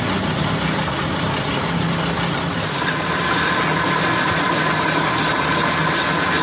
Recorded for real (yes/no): yes